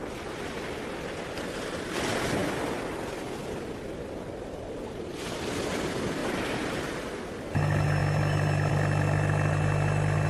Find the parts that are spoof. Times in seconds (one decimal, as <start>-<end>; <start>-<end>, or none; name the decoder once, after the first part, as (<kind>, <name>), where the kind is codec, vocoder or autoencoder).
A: 6.2-6.8 (vocoder, BigVGAN v2)